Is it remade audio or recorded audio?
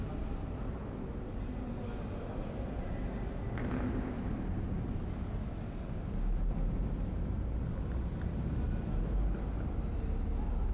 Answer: recorded